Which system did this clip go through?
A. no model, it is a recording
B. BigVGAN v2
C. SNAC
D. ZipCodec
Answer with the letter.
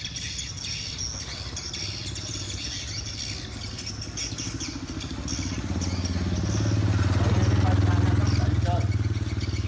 A